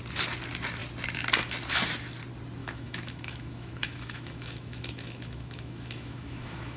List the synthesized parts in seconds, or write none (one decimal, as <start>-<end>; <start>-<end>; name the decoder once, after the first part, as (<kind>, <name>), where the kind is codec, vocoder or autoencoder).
2.6-6.8 (autoencoder, DAC-VAE)